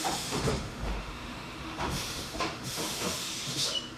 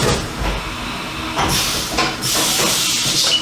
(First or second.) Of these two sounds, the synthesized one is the first